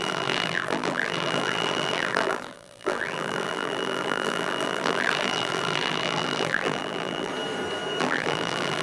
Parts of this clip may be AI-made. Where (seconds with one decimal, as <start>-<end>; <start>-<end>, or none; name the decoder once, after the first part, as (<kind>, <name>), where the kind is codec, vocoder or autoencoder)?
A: 0.0-7.3 (vocoder, BigVGAN v2); 8.0-8.8